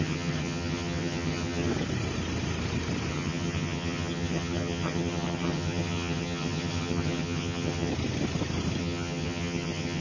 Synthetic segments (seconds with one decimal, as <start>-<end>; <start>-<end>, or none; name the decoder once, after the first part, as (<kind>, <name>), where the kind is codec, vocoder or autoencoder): 0.0-1.7 (vocoder, HiFi-GAN); 3.1-7.9; 8.8-10.0